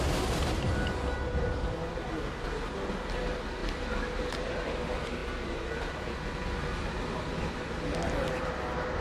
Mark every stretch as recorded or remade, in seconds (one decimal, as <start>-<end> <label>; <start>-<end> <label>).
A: 0.0-9.0 recorded